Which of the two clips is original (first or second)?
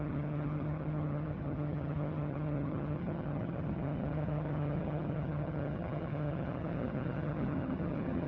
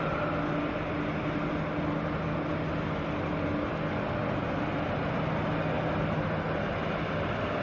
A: second